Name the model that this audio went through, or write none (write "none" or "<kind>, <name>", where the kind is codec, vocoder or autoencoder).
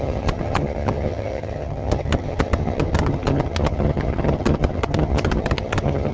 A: vocoder, HiFi-GAN